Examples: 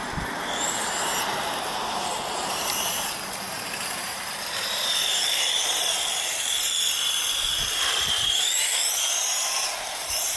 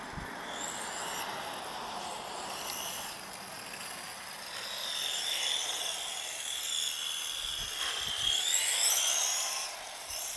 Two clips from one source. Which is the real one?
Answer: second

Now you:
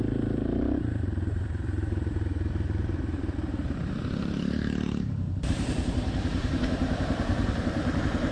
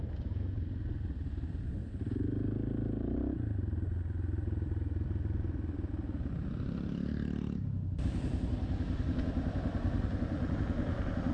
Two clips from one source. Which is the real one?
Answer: second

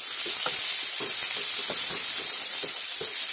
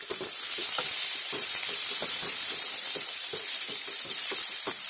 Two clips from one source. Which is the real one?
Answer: first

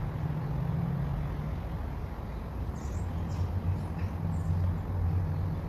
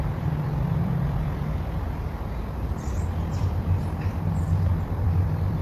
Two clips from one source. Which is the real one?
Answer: first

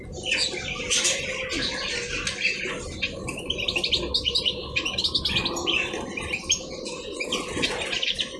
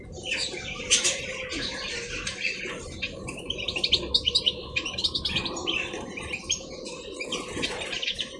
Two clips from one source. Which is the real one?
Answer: first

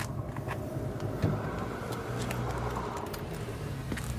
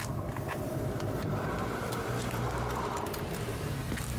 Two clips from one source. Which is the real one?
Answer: first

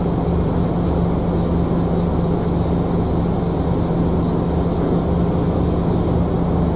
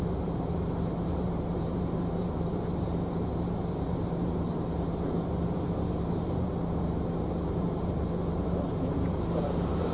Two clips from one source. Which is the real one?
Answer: first